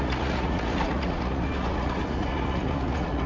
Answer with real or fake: fake